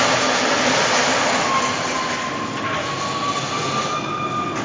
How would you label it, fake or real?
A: real